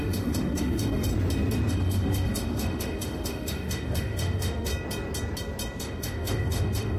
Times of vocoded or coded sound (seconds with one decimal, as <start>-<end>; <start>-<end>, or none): 0.0-1.1; 1.7-4.7; 5.8-7.0